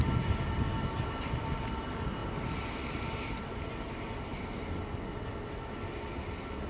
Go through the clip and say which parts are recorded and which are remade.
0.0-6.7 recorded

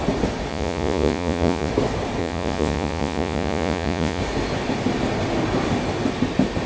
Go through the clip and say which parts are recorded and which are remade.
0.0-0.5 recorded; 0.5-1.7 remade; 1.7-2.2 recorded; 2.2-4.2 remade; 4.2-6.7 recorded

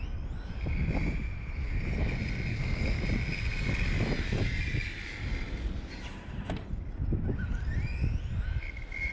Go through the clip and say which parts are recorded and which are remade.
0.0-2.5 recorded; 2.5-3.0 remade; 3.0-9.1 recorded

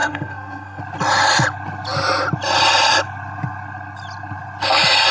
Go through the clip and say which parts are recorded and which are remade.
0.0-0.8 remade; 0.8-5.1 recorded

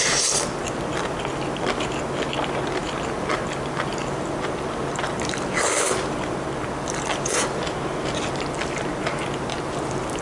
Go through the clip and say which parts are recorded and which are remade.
0.0-10.2 recorded

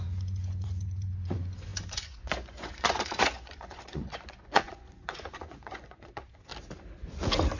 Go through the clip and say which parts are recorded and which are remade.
0.0-6.5 remade; 6.5-7.6 recorded

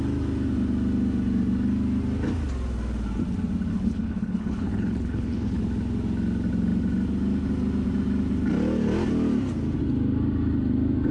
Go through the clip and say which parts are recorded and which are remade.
0.0-3.7 recorded; 3.7-5.6 remade; 5.6-11.1 recorded